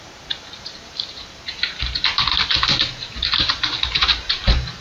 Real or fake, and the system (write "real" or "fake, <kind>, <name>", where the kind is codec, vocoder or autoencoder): fake, vocoder, BigVGAN v2